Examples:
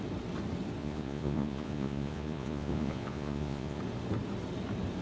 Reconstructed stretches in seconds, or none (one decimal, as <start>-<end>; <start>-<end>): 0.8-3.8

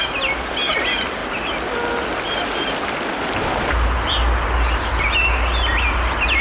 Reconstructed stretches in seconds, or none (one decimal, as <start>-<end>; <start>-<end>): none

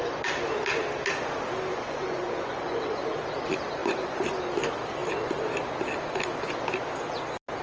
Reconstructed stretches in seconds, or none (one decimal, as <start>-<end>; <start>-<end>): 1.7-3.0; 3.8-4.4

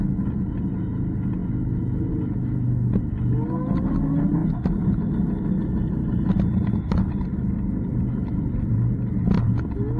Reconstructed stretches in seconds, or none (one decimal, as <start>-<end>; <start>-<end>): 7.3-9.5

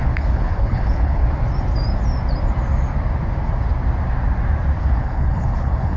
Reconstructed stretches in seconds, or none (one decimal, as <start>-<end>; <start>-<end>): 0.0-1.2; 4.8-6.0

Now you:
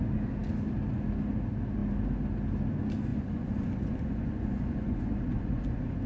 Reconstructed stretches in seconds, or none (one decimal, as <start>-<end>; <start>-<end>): 3.1-6.1